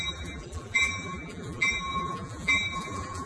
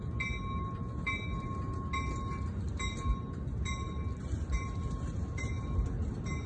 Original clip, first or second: second